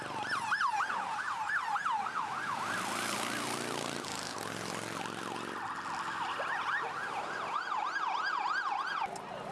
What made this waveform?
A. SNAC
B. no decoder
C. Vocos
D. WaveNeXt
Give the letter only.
B